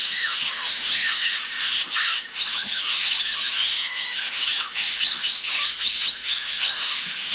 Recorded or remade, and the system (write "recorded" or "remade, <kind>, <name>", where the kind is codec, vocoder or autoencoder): remade, autoencoder, DAC-VAE